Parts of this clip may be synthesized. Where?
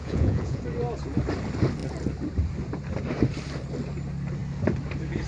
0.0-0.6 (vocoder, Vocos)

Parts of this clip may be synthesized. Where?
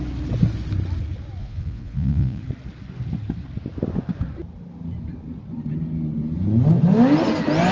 1.4-2.4 (vocoder, Vocos)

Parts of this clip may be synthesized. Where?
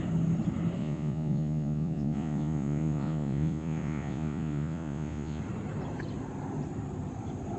0.8-5.4 (vocoder, Vocos)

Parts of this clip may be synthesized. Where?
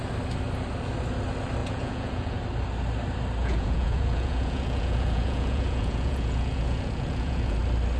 1.6-2.4 (vocoder, Vocos); 3.4-7.6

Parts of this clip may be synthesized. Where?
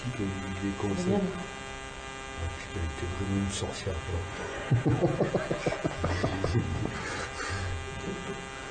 4.1-5.3 (vocoder, Vocos); 6.3-7.2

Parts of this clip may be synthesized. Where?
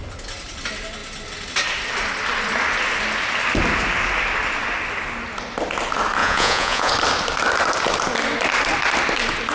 6.2-6.9 (vocoder, Vocos)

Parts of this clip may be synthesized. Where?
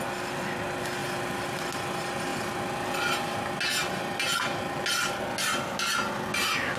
none